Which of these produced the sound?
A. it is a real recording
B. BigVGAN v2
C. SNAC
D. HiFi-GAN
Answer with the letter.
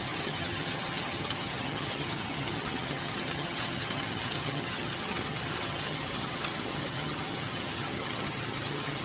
D